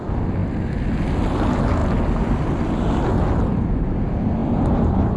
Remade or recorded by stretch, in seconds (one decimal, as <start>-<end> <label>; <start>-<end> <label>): 0.0-5.2 recorded